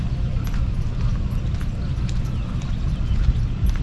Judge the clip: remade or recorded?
recorded